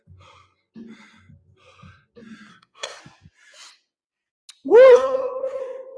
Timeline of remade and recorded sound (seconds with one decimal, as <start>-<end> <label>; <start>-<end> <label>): 0.0-2.5 recorded; 2.5-3.0 remade; 3.0-4.9 recorded; 4.9-5.6 remade; 5.6-6.0 recorded